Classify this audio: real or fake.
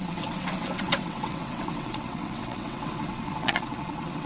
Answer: fake